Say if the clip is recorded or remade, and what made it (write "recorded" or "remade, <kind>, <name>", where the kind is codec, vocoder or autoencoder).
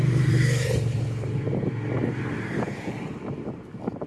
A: remade, vocoder, BigVGAN v2